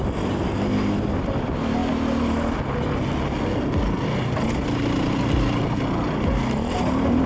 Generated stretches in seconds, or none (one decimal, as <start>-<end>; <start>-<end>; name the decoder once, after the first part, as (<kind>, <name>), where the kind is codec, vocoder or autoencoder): none